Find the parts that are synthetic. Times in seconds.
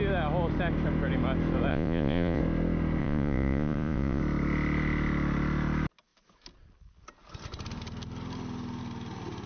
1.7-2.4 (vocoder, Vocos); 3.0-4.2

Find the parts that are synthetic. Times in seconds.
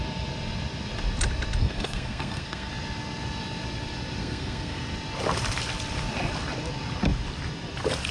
1.6-2.7 (codec, SNAC); 4.2-4.8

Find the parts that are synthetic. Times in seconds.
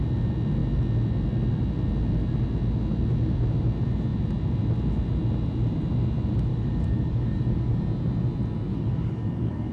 6.5-7.8 (codec, DAC); 8.7-9.7